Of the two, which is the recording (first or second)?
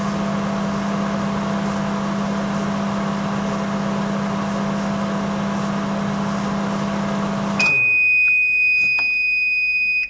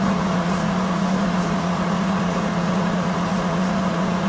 first